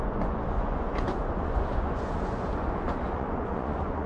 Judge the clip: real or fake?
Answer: fake